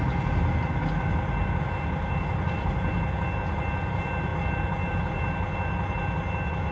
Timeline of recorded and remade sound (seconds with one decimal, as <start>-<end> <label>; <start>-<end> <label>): 0.0-6.7 recorded